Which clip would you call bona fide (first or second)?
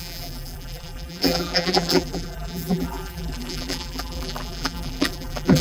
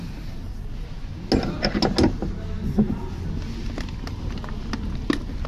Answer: second